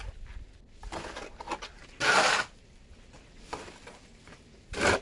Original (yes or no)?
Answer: yes